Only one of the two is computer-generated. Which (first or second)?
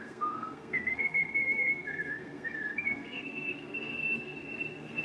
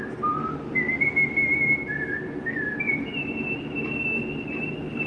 first